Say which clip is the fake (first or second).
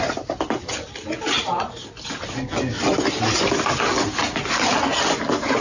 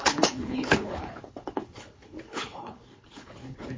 second